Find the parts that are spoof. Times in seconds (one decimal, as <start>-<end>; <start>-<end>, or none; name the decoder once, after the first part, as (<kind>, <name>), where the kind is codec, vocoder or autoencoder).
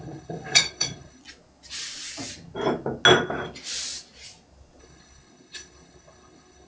0.0-1.2 (codec, HILCodec); 4.8-6.7